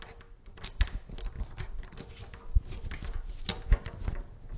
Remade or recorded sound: recorded